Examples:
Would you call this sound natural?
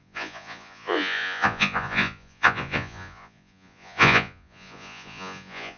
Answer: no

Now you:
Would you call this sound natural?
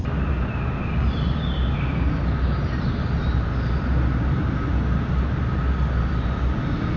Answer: yes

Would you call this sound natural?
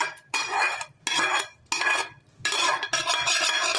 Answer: yes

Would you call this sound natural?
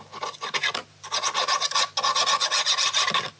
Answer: yes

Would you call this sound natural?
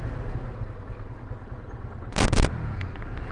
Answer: yes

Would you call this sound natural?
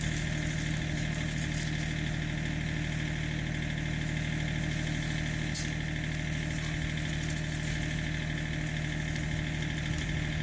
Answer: yes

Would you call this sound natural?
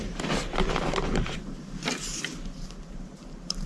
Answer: no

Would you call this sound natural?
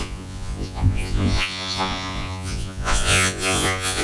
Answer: no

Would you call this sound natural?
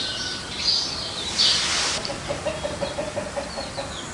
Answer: yes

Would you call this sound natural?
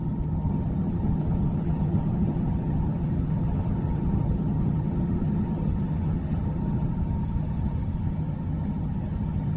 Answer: no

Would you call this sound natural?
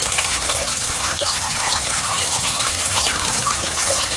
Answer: no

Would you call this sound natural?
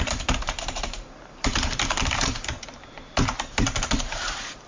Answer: no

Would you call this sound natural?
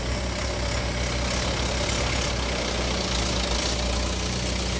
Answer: yes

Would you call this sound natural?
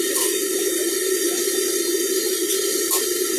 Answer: yes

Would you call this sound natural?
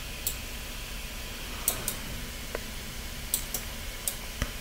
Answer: yes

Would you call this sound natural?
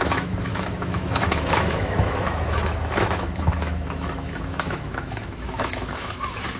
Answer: no